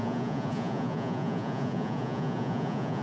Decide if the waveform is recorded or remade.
remade